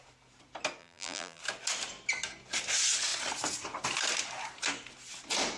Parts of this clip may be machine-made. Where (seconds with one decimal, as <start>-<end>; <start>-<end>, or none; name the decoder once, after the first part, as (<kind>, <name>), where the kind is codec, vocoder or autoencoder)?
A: 0.8-1.4 (vocoder, BigVGAN v2)